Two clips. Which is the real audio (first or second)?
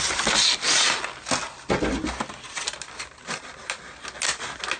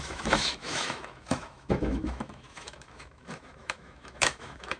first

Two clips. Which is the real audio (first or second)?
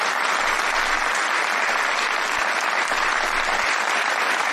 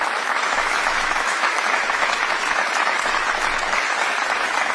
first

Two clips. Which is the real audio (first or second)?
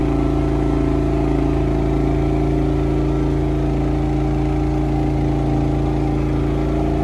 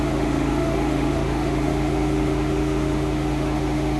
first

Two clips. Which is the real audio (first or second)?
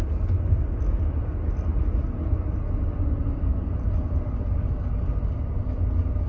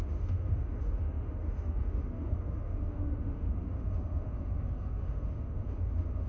first